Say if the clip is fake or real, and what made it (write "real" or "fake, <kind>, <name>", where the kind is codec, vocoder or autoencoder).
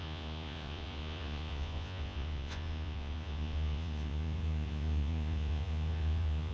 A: fake, vocoder, Vocos